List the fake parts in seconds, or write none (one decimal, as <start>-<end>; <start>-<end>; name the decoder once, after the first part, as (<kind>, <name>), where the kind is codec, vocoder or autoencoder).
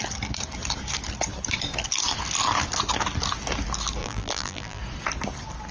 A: 4.0-4.8 (vocoder, BigVGAN v2)